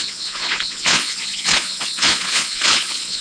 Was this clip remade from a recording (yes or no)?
yes